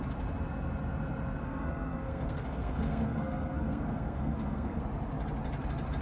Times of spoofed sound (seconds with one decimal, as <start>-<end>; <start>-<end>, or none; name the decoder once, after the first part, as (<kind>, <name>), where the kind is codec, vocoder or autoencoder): 1.4-4.8 (codec, SNAC)